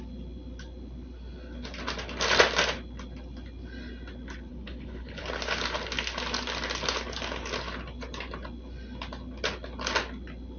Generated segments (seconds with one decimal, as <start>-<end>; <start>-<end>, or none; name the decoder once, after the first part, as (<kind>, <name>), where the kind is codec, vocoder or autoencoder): 4.5-5.2 (codec, HILCodec)

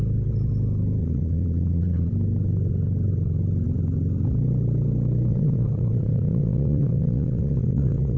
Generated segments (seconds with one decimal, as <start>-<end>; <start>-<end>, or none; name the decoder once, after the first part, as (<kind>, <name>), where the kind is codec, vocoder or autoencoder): 1.0-2.1 (vocoder, Vocos); 5.3-8.2

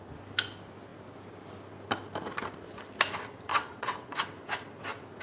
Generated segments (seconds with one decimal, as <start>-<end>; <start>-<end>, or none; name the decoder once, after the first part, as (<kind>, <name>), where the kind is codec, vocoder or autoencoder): 3.5-4.1 (vocoder, WaveNeXt)

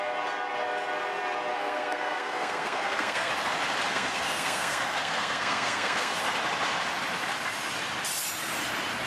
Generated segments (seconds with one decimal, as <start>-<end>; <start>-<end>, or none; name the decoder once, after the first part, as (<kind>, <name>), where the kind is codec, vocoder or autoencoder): 1.5-3.3 (codec, SNAC); 3.9-6.2

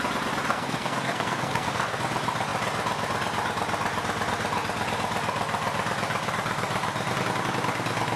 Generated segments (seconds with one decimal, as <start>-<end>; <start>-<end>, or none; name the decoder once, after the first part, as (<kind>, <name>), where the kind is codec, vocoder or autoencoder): 0.5-2.0 (codec, SNAC)

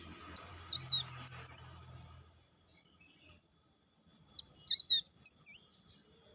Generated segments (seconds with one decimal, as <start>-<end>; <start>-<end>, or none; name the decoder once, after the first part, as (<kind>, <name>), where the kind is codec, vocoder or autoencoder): none

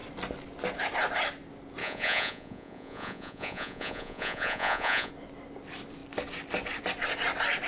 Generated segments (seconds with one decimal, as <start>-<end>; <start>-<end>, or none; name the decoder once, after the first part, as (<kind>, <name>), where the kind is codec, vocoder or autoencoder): 1.8-5.1 (vocoder, Vocos)